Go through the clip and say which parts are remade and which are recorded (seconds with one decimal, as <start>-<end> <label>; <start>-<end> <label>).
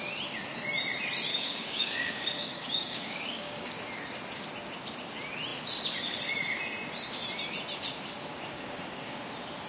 0.0-1.3 recorded; 1.3-3.7 remade; 3.7-8.3 recorded; 8.3-9.2 remade; 9.2-9.7 recorded